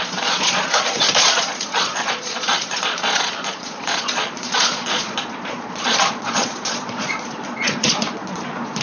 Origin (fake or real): fake